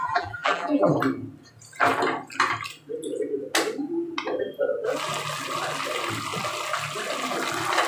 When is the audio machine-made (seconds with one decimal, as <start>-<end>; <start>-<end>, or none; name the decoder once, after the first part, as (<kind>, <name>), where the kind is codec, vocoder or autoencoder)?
0.0-0.9 (vocoder, BigVGAN v2)